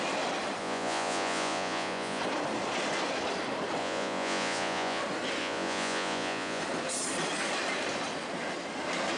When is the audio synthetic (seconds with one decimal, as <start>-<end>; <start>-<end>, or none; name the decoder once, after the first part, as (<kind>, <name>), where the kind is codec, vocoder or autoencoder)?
0.6-2.2 (vocoder, Vocos); 3.8-5.0; 5.4-6.6